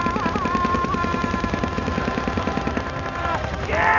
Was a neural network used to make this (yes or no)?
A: yes